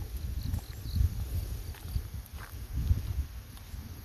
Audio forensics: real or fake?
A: real